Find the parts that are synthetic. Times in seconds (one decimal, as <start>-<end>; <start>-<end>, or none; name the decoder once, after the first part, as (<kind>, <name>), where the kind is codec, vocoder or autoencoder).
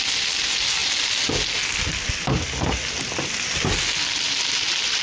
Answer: none